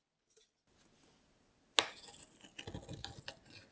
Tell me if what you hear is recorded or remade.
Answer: recorded